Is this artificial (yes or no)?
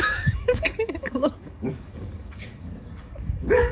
yes